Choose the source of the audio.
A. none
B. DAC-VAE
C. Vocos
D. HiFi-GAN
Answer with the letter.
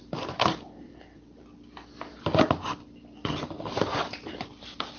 A